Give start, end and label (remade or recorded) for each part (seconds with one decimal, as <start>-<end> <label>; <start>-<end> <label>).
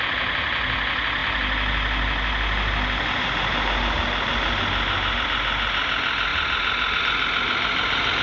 0.0-8.2 recorded